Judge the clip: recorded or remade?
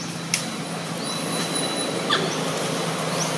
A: recorded